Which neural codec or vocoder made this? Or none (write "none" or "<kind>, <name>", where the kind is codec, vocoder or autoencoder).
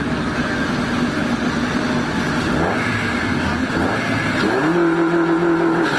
none